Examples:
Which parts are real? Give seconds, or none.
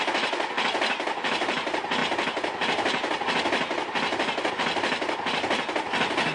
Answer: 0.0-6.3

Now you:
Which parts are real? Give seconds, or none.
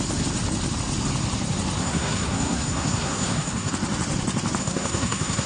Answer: 0.0-1.8; 3.7-4.6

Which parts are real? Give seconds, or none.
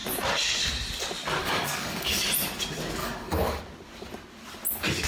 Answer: 0.0-1.4; 2.3-3.0; 3.6-5.1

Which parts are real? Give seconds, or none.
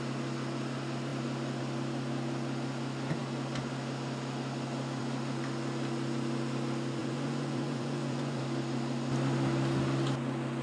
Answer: 0.0-7.0; 8.4-10.6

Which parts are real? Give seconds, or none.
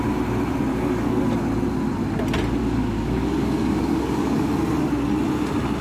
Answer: 0.0-0.7; 1.2-2.6; 4.5-5.8